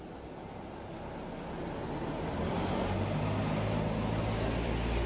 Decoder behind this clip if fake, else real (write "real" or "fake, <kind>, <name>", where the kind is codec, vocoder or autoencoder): real